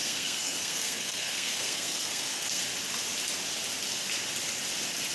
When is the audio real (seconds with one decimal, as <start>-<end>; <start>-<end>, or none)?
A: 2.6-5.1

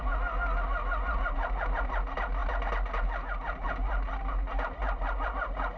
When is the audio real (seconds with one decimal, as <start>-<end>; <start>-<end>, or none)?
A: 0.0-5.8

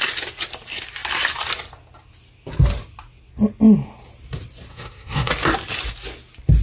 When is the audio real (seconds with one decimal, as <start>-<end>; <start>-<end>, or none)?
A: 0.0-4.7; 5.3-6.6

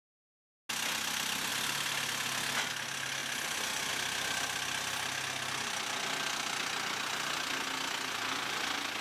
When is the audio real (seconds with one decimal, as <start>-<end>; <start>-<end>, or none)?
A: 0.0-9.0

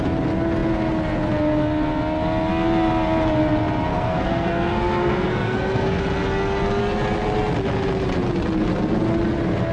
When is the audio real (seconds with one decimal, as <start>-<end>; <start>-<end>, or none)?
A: 0.0-3.9; 6.0-9.7